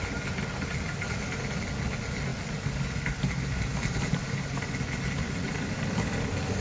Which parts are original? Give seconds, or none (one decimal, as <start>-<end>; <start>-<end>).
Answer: 0.0-6.6